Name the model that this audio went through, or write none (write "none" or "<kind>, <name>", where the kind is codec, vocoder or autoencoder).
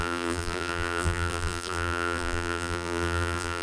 vocoder, BigVGAN v2